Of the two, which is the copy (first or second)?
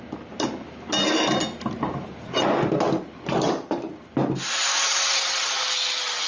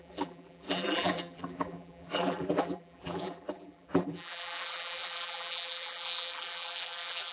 second